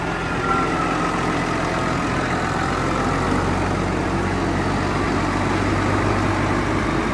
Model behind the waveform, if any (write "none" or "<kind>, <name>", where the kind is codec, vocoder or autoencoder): none